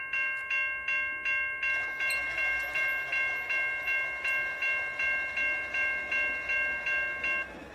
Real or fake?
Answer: real